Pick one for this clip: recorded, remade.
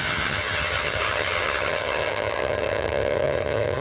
remade